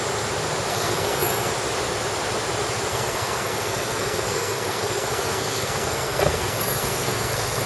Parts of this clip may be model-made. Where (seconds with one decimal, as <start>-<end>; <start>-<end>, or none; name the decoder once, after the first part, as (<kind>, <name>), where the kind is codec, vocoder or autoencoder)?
0.7-1.5 (codec, SNAC); 2.9-7.7